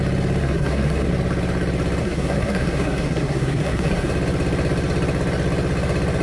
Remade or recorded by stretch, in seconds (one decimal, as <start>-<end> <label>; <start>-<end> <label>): 0.0-0.4 recorded; 0.4-1.1 remade; 1.1-2.0 recorded; 2.0-4.1 remade; 4.1-6.2 recorded